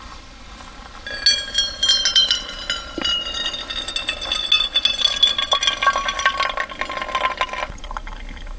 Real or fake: real